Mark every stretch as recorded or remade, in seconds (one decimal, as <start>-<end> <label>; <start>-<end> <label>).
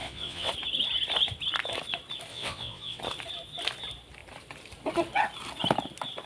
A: 0.0-0.5 remade; 0.5-2.3 recorded; 2.3-3.0 remade; 3.0-6.3 recorded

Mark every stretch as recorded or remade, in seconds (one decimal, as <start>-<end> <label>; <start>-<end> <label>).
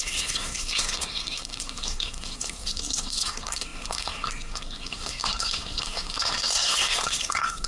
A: 0.0-7.7 remade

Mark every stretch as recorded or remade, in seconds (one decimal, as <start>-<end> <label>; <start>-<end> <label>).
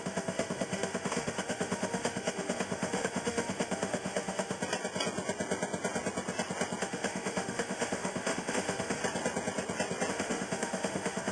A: 0.0-4.6 remade; 4.6-6.8 recorded; 6.8-9.0 remade; 9.0-10.1 recorded; 10.1-11.3 remade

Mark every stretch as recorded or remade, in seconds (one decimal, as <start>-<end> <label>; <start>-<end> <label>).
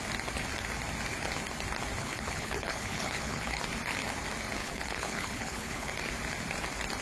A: 0.0-2.0 recorded; 2.0-3.6 remade; 3.6-4.6 recorded; 4.6-5.9 remade; 5.9-7.0 recorded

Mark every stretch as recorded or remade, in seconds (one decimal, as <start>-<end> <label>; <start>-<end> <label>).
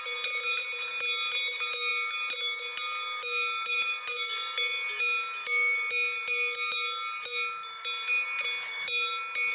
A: 0.0-9.5 recorded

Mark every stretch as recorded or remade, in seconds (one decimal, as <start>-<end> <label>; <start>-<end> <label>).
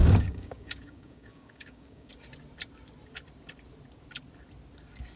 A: 0.0-2.1 remade; 2.1-5.2 recorded